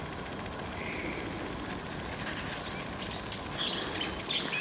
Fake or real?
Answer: real